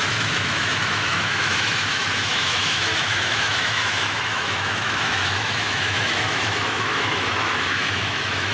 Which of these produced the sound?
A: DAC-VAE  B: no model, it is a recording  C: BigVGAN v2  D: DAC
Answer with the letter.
A